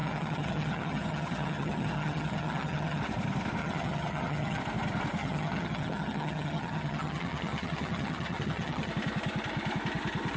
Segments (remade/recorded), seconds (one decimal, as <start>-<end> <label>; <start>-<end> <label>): 0.0-3.0 remade; 3.0-3.6 recorded; 3.6-4.6 remade; 4.6-5.2 recorded; 5.2-8.9 remade; 8.9-10.4 recorded